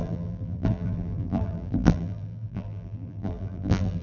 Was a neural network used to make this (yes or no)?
yes